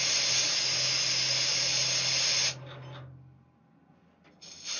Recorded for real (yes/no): yes